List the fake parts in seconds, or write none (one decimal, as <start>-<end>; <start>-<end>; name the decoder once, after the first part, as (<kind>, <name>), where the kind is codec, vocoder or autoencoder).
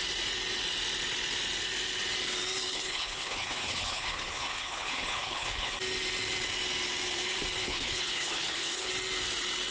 2.7-5.7 (codec, HILCodec); 7.6-8.9